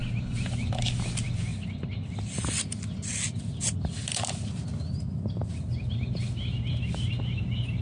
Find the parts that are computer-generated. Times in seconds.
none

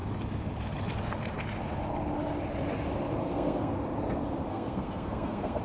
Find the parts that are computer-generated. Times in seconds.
3.2-3.7 (codec, SNAC); 4.5-5.6